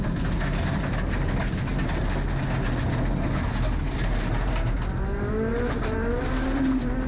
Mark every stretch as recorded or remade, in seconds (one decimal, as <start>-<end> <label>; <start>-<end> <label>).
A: 0.0-7.1 recorded